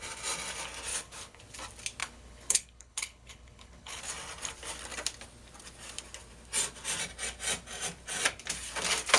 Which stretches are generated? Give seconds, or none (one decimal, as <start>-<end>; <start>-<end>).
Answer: 0.9-1.4; 2.0-4.0